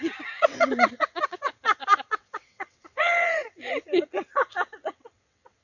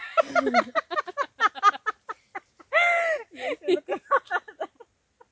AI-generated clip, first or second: first